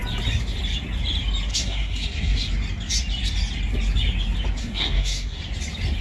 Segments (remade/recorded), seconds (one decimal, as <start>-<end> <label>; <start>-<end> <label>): 0.0-1.5 recorded; 1.5-2.5 remade; 2.5-4.6 recorded; 4.6-5.4 remade; 5.4-6.0 recorded